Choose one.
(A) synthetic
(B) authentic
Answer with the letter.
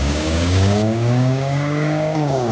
A